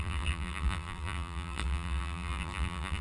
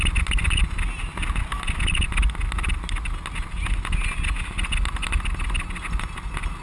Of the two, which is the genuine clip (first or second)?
second